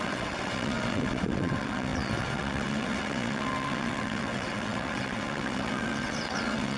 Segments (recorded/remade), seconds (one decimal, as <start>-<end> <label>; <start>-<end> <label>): 0.0-6.8 remade